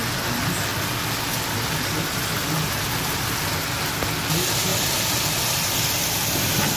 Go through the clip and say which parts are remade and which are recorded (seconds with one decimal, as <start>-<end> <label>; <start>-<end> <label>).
0.0-4.7 recorded; 4.7-6.0 remade; 6.0-6.8 recorded